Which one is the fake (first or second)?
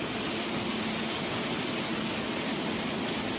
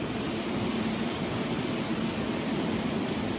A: second